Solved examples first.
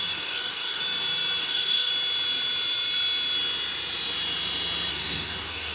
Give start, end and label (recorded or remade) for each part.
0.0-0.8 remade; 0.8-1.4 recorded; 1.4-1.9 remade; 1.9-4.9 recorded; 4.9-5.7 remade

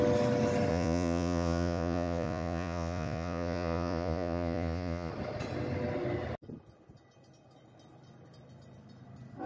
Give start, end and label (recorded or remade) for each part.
0.0-0.7 recorded; 0.7-5.1 remade; 5.1-9.5 recorded

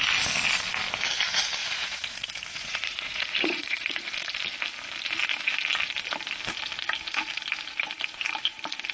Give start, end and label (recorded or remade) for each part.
0.0-1.6 recorded; 1.6-4.0 remade; 4.0-8.9 recorded

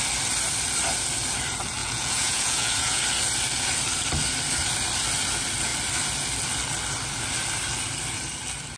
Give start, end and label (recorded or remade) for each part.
0.0-1.8 recorded; 1.8-3.0 remade; 3.0-8.8 recorded

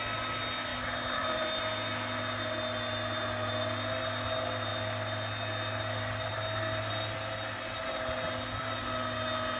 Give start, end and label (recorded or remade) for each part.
0.0-0.7 recorded; 0.7-1.6 remade; 1.6-4.7 recorded; 4.7-7.8 remade; 7.8-9.6 recorded

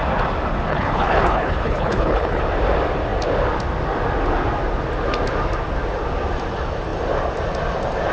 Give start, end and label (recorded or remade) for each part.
0.0-0.7 recorded; 0.7-2.4 remade; 2.4-8.1 recorded

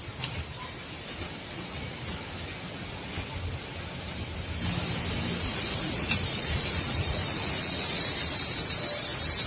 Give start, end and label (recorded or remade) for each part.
0.0-5.4 recorded; 5.4-8.4 remade; 8.4-9.5 recorded